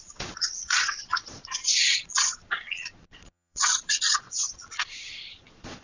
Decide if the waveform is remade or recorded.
remade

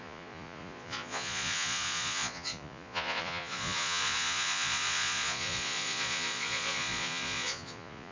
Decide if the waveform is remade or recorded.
remade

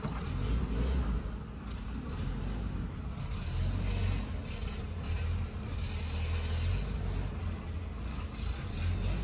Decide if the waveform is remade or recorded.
recorded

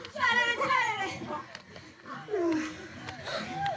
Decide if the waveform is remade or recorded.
recorded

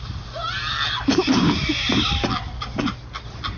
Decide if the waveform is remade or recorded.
recorded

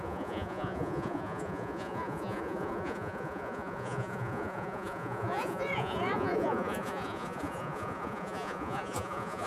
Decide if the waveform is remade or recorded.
remade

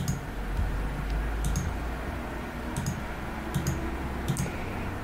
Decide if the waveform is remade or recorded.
recorded